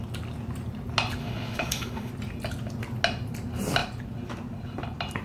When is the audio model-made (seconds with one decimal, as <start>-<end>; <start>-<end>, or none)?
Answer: 1.2-2.1